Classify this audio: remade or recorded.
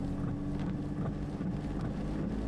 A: recorded